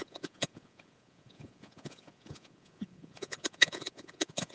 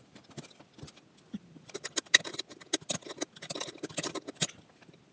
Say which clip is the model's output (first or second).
first